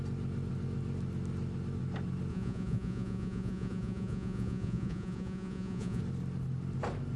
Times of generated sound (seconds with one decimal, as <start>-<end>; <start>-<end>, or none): 2.3-6.0